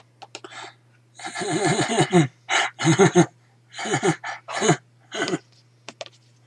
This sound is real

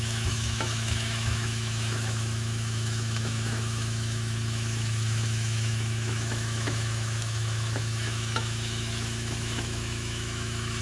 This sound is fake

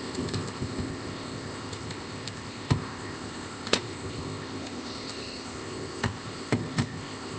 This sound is fake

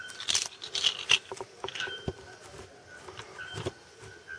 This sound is real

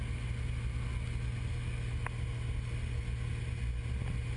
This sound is real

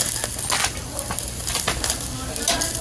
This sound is real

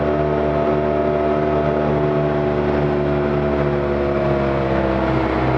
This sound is real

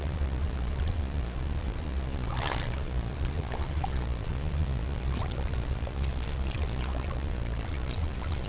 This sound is fake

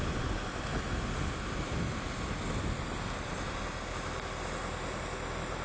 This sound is real